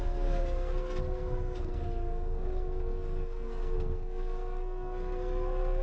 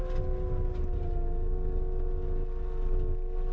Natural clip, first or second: second